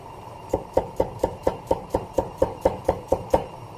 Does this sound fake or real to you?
fake